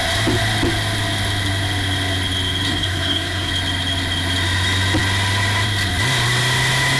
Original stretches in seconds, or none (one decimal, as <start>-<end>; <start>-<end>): 0.0-2.7; 3.5-7.0